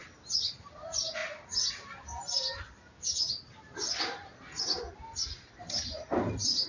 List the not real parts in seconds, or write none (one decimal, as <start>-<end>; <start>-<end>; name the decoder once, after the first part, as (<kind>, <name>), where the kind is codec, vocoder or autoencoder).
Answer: none